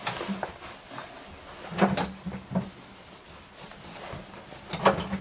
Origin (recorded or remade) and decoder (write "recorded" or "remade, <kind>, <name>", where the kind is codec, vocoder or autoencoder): recorded